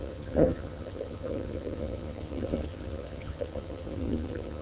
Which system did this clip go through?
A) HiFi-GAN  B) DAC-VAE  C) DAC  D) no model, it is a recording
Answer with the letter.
A